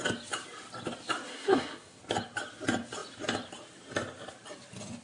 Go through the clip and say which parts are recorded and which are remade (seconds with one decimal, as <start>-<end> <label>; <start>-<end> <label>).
0.0-1.3 recorded; 1.3-2.0 remade; 2.0-5.0 recorded